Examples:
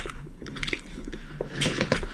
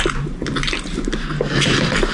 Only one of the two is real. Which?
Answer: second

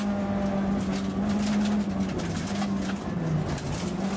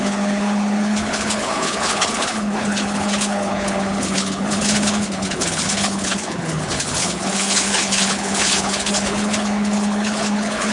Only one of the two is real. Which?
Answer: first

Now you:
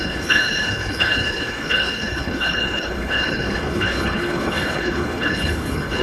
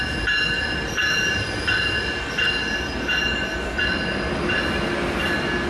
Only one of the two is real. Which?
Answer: second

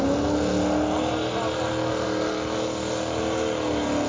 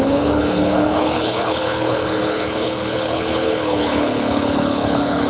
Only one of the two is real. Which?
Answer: first